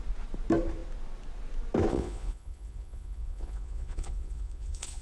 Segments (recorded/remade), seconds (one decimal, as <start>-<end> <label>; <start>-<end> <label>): 0.0-1.9 recorded; 1.9-5.0 remade